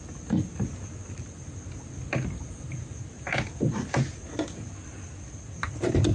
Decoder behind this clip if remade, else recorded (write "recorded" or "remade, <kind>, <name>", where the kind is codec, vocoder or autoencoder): recorded